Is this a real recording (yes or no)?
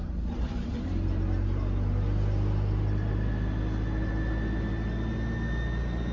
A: yes